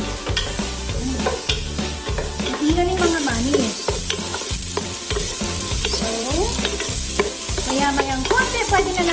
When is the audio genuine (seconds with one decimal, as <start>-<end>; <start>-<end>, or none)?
0.0-4.3; 6.5-9.1